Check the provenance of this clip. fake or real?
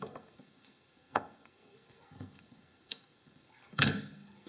fake